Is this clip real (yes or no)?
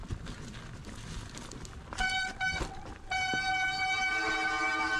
yes